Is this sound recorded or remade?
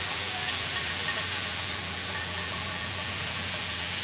remade